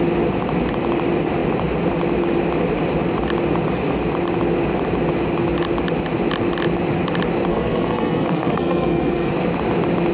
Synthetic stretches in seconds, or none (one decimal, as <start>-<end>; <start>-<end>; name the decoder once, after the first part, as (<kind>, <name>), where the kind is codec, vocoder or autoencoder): 7.5-9.3 (codec, SNAC)